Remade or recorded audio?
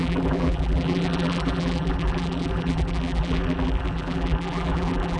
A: remade